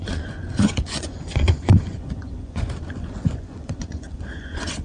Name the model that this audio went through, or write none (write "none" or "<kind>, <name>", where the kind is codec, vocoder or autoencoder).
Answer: vocoder, Vocos